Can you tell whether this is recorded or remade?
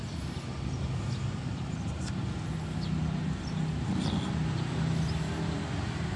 recorded